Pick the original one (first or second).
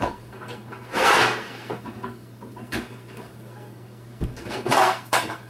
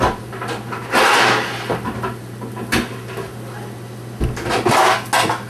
second